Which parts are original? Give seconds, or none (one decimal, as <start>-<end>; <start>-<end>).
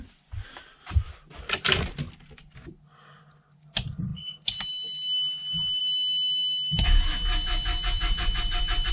0.0-8.9